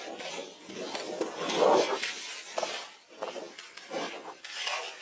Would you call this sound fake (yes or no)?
no